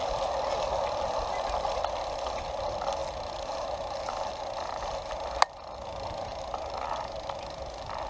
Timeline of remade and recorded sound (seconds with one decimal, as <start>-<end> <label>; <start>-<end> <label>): 0.0-8.1 recorded